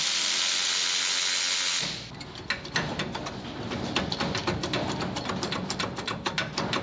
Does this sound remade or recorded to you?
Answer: recorded